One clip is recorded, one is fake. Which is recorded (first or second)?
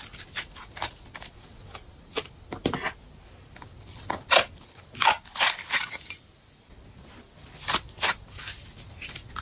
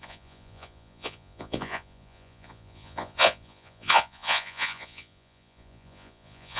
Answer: first